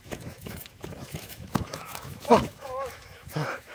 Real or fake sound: fake